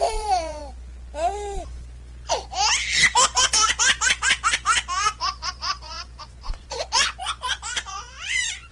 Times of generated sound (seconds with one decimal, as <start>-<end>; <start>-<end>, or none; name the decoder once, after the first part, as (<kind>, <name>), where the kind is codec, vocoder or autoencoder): 0.0-0.6 (vocoder, Vocos); 5.0-8.7